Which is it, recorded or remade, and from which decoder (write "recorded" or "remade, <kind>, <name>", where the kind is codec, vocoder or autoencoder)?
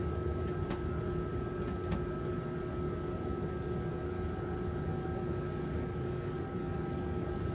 remade, codec, DAC